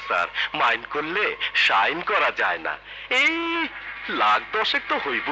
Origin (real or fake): real